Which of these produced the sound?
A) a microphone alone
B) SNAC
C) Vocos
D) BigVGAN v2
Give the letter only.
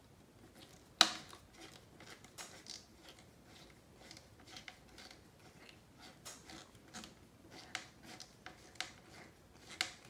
A